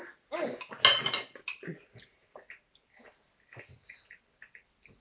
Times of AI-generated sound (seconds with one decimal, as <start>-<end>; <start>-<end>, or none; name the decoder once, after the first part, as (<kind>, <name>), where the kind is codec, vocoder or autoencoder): none